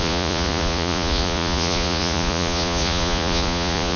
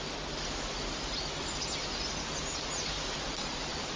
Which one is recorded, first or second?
second